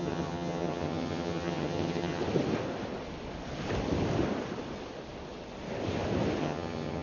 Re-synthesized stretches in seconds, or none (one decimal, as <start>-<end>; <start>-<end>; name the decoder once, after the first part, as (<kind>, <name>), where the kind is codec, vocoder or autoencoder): 0.0-2.2 (vocoder, HiFi-GAN); 6.4-7.0